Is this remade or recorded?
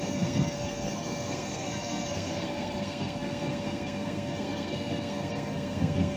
remade